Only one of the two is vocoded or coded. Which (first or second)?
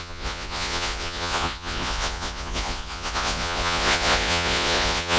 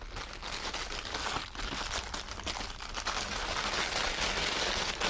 first